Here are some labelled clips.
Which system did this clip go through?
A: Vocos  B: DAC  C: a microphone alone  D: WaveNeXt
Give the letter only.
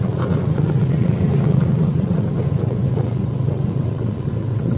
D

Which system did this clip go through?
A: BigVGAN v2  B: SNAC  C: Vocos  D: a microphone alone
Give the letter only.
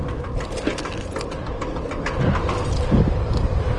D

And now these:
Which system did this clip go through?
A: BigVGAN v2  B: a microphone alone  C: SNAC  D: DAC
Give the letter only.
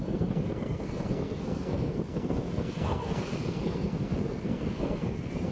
C